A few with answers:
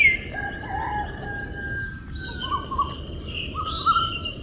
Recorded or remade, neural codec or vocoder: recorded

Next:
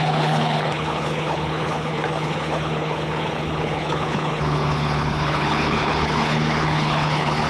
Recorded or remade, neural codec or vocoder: remade, codec, HILCodec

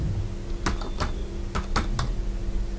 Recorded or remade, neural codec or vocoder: recorded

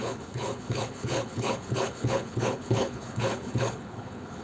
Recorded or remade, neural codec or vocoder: remade, codec, HILCodec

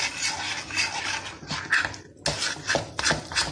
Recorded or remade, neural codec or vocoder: recorded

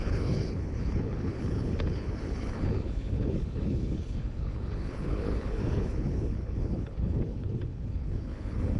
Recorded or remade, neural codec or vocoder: remade, codec, HILCodec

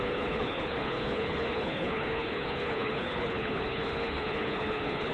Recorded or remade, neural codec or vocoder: remade, codec, HILCodec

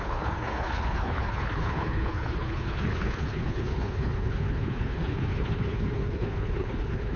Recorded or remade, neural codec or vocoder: remade, codec, HILCodec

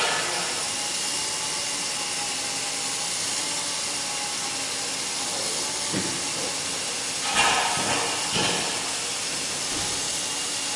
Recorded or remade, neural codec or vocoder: recorded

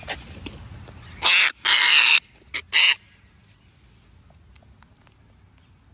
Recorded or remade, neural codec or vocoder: recorded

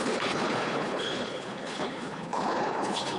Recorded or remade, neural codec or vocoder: remade, codec, HILCodec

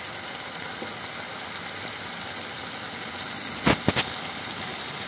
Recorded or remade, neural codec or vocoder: recorded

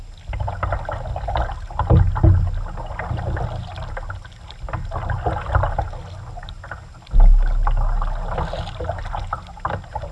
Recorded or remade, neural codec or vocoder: recorded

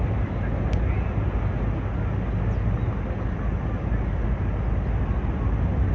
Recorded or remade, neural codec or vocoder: recorded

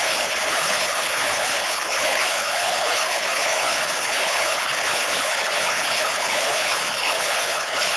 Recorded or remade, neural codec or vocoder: remade, codec, HILCodec